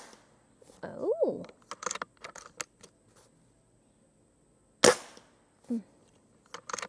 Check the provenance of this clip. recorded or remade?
recorded